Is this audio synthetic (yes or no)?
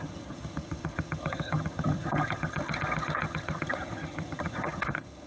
yes